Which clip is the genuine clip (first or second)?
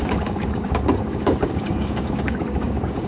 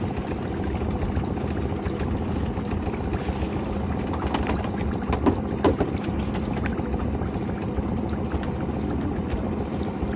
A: second